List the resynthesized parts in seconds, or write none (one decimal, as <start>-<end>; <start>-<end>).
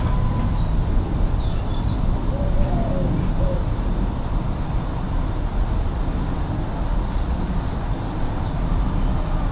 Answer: 6.9-7.4